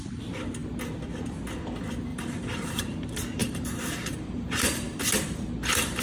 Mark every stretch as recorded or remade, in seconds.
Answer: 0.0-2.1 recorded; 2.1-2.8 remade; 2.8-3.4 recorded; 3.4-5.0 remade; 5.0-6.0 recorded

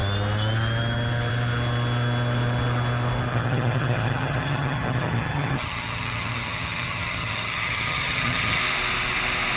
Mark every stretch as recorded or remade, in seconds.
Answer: 0.0-3.3 recorded; 3.3-8.6 remade; 8.6-9.6 recorded

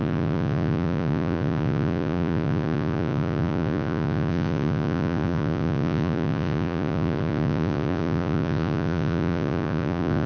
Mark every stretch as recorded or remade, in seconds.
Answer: 0.0-10.3 remade

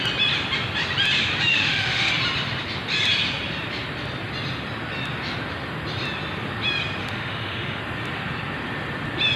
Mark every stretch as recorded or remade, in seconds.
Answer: 0.0-1.5 recorded; 1.5-2.1 remade; 2.1-7.0 recorded; 7.0-7.8 remade; 7.8-9.4 recorded

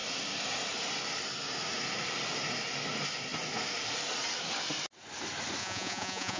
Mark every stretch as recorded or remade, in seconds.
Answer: 0.0-5.6 recorded; 5.6-6.4 remade